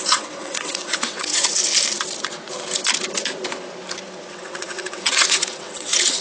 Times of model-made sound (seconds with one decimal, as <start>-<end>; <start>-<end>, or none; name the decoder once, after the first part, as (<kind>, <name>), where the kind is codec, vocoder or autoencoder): 0.0-1.6 (vocoder, WaveNeXt); 4.3-6.2